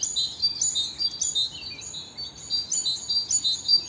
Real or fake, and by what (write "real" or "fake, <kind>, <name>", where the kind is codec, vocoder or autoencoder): real